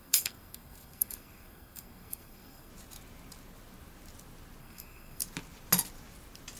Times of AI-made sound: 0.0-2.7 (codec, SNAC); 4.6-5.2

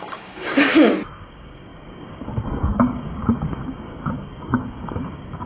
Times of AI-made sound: 0.0-0.7 (codec, DAC); 1.2-5.5

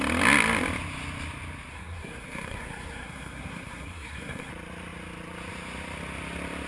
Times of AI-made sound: 1.7-4.5 (codec, SNAC)